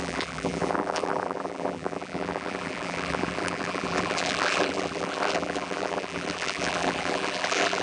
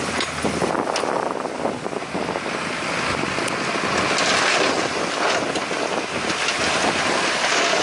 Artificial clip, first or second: first